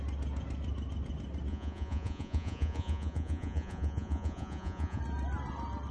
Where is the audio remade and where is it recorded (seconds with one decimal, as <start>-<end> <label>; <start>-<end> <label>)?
0.0-1.5 recorded; 1.5-5.0 remade; 5.0-5.9 recorded